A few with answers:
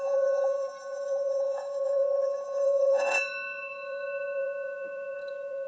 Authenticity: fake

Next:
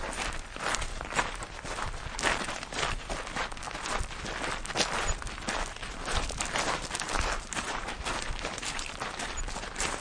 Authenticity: real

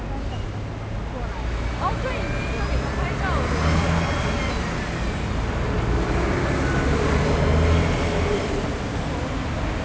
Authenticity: real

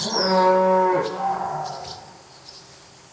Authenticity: real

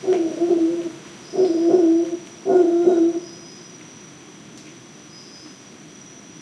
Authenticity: real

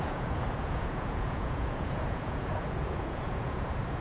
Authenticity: fake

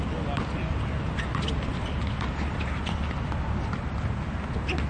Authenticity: real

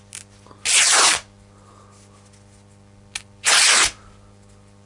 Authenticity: real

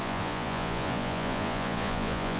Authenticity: fake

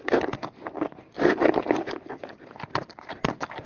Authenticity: real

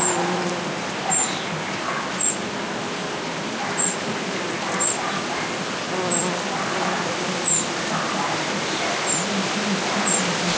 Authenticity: real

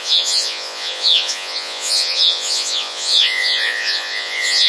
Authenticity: fake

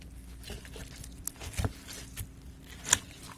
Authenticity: real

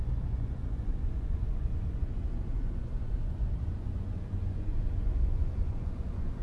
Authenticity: fake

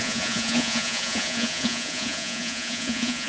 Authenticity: fake